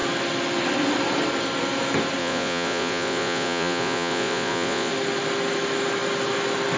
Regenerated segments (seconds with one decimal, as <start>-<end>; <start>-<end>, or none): 2.2-4.9

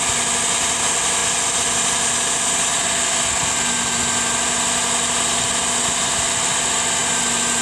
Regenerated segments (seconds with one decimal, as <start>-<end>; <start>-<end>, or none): none

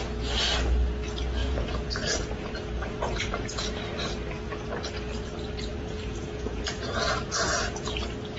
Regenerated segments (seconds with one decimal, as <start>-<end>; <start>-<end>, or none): 1.4-3.7; 5.7-7.9

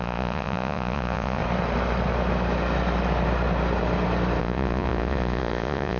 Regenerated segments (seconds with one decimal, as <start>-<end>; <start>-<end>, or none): 0.0-1.4; 4.4-6.0

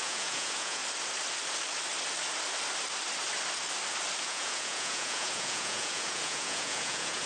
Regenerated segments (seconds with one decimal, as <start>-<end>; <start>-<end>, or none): 0.0-0.8; 4.2-7.3

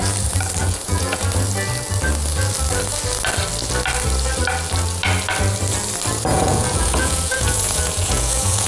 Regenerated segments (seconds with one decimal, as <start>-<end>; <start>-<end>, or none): 0.6-1.2; 6.3-8.7